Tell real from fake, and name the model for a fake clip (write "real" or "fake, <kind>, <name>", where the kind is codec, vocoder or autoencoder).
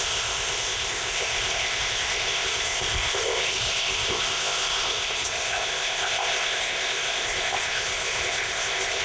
fake, codec, ZipCodec